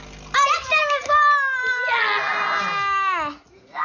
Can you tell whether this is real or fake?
real